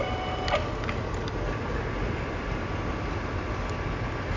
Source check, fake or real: real